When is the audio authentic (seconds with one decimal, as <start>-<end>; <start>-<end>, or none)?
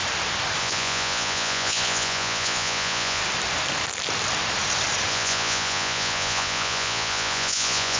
0.0-0.6; 3.2-5.1